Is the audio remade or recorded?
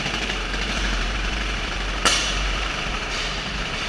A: remade